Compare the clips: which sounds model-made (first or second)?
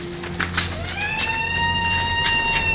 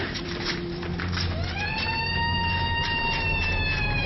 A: second